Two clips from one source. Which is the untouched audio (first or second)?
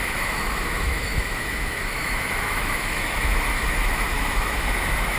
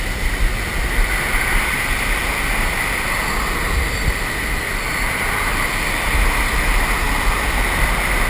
second